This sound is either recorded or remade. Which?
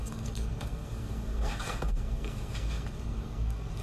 remade